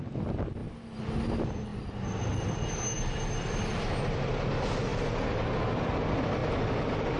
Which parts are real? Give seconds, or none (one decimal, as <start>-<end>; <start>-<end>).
0.0-4.9; 5.6-7.2